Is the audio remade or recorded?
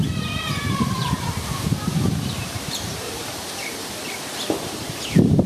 remade